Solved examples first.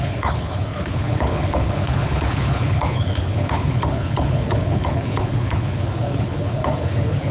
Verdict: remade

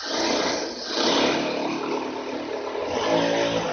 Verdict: recorded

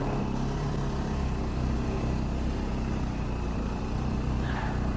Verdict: remade